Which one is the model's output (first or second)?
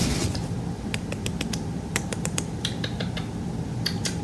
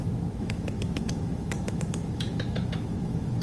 second